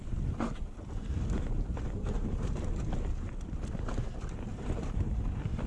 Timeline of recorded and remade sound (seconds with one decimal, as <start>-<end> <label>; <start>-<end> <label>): 0.0-4.5 recorded; 4.5-5.3 remade; 5.3-5.7 recorded